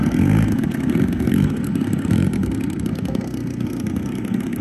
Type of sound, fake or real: fake